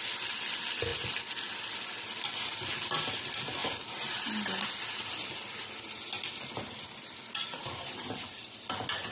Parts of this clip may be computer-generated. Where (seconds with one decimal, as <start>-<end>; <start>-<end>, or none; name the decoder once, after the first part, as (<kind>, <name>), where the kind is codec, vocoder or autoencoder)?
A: none